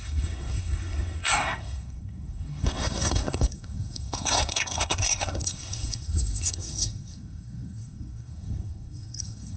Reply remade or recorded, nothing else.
remade